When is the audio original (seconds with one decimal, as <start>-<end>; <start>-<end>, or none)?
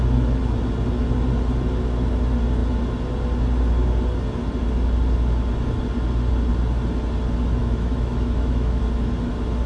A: 0.0-7.6; 8.8-9.7